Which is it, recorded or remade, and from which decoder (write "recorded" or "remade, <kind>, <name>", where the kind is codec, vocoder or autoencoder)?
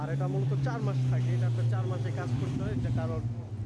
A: recorded